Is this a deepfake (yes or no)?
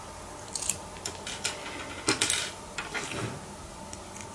no